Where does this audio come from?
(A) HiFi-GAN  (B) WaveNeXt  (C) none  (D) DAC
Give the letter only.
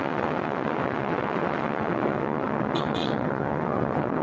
B